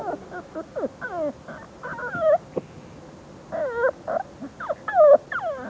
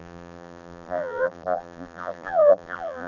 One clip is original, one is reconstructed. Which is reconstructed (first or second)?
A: second